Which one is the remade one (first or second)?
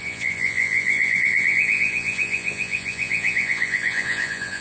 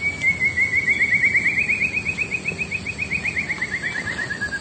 first